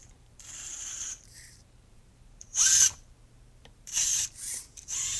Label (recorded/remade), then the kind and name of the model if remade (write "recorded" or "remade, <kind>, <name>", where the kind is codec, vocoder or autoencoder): remade, vocoder, BigVGAN v2